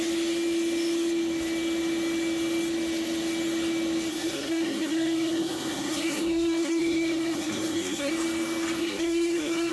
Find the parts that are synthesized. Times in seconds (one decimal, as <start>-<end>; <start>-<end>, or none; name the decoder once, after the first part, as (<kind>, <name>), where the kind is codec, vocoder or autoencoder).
4.1-8.1 (codec, SNAC); 8.8-9.7